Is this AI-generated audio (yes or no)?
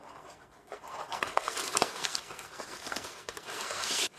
yes